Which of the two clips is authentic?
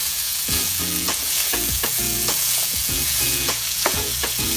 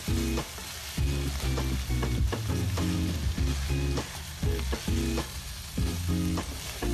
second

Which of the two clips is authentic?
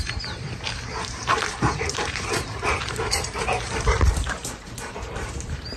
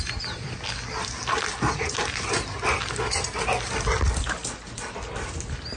second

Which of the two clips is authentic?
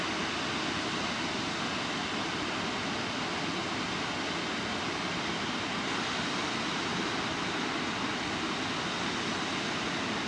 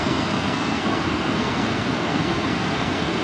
first